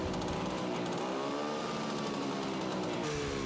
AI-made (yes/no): no